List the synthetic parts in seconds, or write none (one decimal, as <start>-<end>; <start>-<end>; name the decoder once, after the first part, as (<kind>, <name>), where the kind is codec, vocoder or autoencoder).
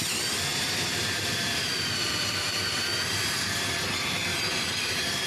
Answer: 0.5-3.7 (vocoder, BigVGAN v2); 4.3-5.3